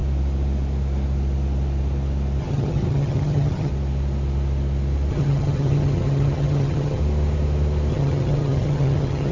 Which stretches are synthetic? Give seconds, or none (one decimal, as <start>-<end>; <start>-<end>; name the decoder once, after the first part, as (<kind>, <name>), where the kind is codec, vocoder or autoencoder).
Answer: 2.4-3.7 (vocoder, HiFi-GAN); 5.1-7.0; 7.9-9.3